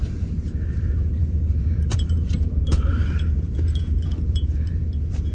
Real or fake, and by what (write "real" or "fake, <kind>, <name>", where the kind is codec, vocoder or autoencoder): fake, vocoder, BigVGAN v2